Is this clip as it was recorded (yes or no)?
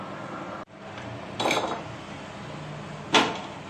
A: yes